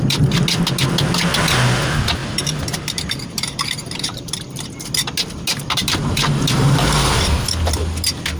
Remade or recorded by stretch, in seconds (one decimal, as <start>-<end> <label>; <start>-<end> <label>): 0.0-2.2 recorded; 2.2-4.6 remade; 4.6-5.5 recorded; 5.5-7.2 remade; 7.2-8.4 recorded